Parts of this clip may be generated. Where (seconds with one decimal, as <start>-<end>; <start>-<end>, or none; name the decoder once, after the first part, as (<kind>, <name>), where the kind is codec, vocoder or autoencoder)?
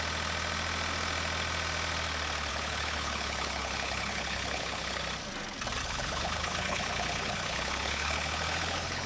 2.5-5.0 (codec, HILCodec); 5.8-9.1